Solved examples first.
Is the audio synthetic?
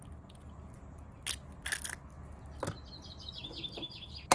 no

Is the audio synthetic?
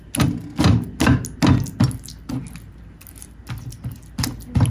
no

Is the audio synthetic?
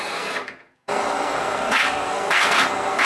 yes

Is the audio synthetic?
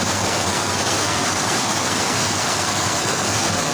yes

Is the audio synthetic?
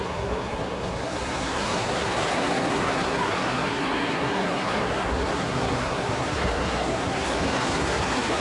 yes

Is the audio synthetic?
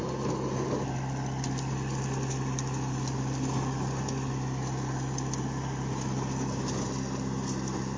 no